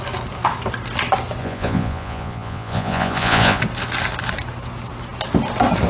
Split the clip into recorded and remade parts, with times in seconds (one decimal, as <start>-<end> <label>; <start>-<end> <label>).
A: 0.0-1.4 recorded; 1.4-3.6 remade; 3.6-5.9 recorded